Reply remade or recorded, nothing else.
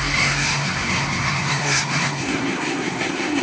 remade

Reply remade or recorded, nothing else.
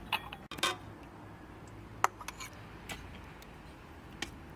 recorded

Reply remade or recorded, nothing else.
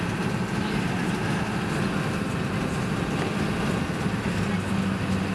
recorded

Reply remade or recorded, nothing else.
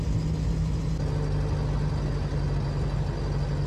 recorded